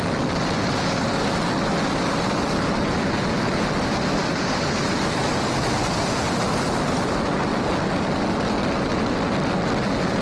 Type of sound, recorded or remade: recorded